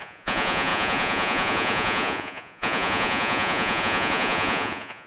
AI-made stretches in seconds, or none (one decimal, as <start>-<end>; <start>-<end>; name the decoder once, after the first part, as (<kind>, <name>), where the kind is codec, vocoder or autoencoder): 0.0-5.1 (vocoder, Vocos)